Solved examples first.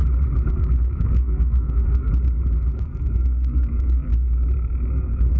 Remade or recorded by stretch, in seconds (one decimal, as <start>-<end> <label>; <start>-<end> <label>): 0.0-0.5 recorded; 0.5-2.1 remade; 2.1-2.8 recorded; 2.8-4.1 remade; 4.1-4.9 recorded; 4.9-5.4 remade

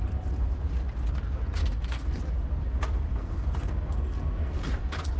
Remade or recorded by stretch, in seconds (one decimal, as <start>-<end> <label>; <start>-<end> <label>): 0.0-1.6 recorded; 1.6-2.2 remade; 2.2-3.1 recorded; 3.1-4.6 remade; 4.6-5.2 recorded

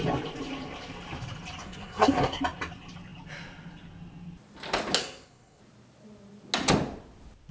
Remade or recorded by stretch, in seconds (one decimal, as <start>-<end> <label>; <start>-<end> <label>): 0.0-1.6 recorded; 1.6-2.4 remade; 2.4-5.0 recorded; 5.0-5.6 remade; 5.6-7.5 recorded